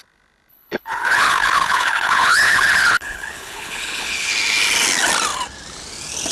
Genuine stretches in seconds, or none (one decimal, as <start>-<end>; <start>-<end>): 0.0-0.5; 4.3-6.3